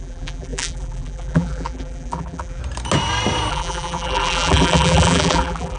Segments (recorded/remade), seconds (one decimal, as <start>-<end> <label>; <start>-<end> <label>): 0.0-2.6 remade; 2.6-3.5 recorded; 3.5-5.8 remade

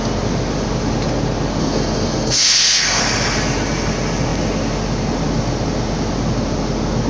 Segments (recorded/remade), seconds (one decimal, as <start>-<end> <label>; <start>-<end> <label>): 0.0-1.6 recorded; 1.6-3.0 remade; 3.0-7.1 recorded

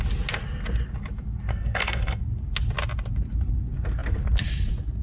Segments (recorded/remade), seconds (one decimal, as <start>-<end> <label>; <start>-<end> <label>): 0.0-1.5 recorded; 1.5-2.2 remade; 2.2-5.0 recorded

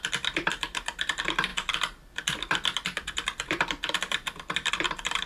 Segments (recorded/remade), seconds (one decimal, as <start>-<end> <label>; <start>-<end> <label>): 0.0-5.3 remade

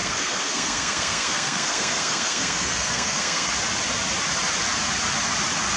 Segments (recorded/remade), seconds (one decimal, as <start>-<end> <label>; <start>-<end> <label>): 0.0-3.5 remade; 3.5-5.8 recorded

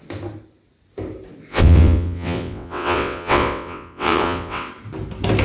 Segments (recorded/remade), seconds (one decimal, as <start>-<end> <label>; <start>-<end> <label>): 0.0-1.5 recorded; 1.5-4.7 remade; 4.7-5.4 recorded